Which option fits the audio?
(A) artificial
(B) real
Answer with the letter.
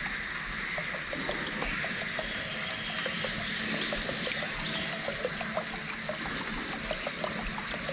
B